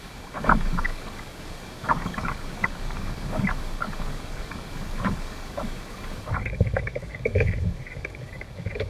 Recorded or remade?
remade